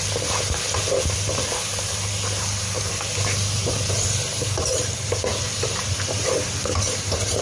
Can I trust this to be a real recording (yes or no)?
yes